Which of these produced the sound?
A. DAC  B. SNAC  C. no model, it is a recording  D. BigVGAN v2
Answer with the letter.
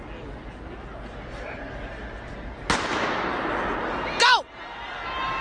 C